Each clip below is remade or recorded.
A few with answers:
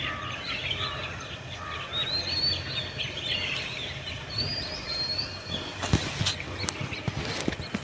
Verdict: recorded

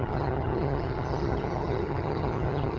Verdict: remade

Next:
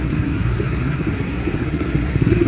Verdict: remade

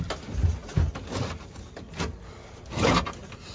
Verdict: recorded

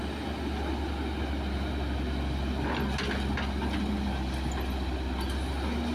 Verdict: recorded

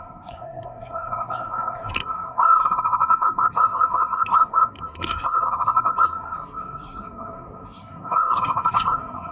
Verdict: remade